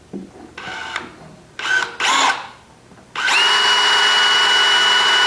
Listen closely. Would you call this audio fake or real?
real